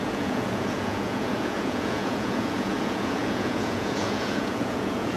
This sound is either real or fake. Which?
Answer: fake